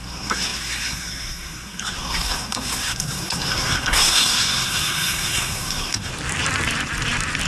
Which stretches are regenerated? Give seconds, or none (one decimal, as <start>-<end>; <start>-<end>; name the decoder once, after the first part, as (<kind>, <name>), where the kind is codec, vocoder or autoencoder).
0.0-6.1 (codec, SNAC)